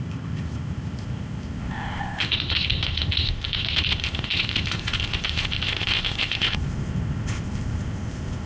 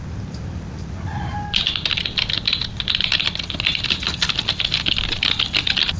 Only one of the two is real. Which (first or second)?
second